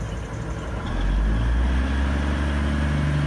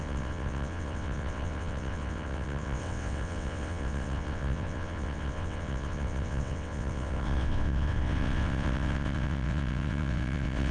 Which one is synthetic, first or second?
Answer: second